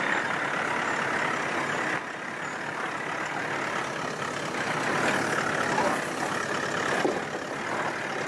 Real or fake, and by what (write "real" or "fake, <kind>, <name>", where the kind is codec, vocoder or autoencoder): real